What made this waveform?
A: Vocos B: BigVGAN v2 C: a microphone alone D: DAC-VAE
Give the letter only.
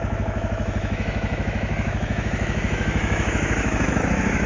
D